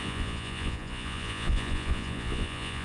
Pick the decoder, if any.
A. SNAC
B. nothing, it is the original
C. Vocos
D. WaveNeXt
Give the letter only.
C